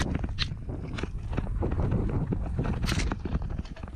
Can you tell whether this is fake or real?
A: real